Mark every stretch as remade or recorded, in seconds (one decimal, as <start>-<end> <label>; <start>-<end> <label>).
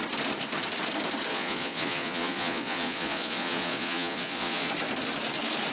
0.0-1.3 recorded; 1.3-4.7 remade; 4.7-5.7 recorded